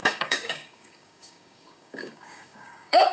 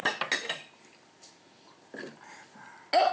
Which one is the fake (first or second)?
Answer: first